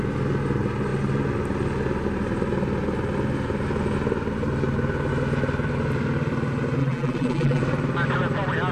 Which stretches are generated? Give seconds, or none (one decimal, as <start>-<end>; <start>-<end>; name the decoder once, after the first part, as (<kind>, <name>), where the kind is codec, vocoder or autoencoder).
6.8-7.6 (vocoder, BigVGAN v2)